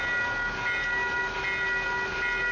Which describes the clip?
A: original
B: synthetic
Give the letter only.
A